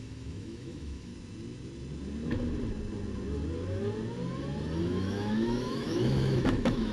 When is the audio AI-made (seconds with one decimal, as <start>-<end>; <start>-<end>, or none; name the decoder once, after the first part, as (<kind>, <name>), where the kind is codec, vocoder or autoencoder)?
0.0-1.1 (autoencoder, DAC-VAE); 4.8-6.9